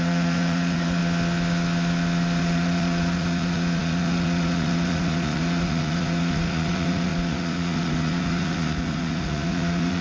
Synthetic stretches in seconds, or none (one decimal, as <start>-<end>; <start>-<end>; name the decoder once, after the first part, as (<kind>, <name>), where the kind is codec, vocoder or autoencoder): 0.0-1.0 (vocoder, Vocos); 2.4-10.0